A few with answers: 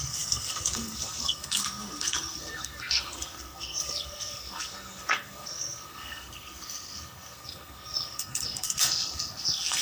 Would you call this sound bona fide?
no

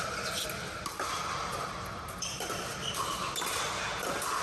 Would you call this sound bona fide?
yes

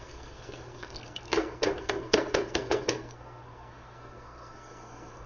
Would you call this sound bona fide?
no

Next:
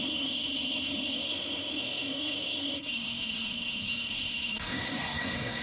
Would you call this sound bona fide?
no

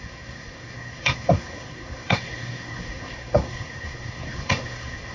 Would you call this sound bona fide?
no